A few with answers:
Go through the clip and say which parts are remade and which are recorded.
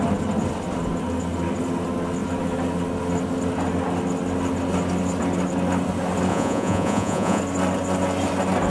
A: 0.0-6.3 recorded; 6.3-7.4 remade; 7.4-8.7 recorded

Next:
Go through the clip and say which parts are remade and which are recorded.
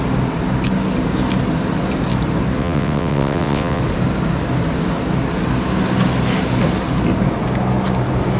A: 0.0-2.6 recorded; 2.6-3.8 remade; 3.8-8.4 recorded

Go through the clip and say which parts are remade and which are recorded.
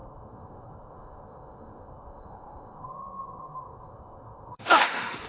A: 0.0-5.3 remade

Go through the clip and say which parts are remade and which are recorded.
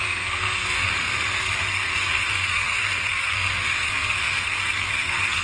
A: 0.0-5.4 remade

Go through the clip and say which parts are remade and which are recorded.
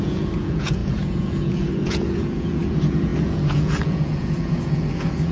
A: 0.0-5.3 remade